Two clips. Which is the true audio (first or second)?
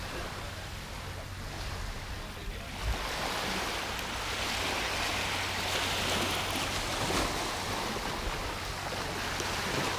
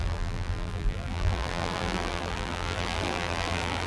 first